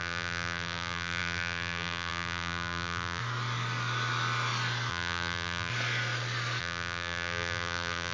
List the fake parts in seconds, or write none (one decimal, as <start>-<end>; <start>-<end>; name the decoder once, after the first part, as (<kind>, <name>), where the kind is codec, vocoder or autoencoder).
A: 0.0-3.2 (vocoder, BigVGAN v2); 4.9-5.7; 6.6-8.1